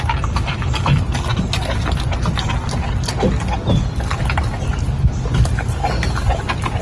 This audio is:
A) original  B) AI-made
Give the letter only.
A